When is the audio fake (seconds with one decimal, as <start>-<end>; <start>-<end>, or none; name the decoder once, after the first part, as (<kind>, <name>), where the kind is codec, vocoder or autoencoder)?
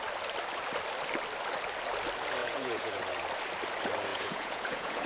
2.4-3.0 (vocoder, Vocos); 4.1-5.1